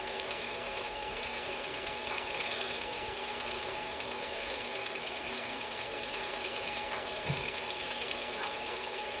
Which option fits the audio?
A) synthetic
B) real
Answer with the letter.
A